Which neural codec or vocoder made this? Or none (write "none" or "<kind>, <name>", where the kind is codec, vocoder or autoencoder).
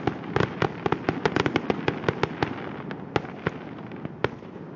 none